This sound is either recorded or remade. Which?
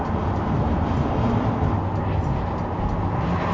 recorded